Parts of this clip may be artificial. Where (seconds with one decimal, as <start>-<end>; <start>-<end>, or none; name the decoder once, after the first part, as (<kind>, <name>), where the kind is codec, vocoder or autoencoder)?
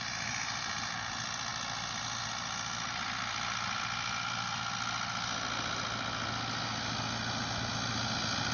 none